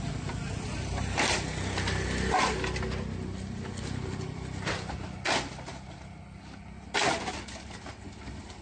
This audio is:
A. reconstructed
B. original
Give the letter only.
B